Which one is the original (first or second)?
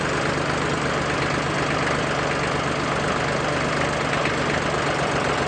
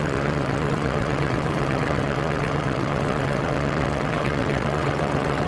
first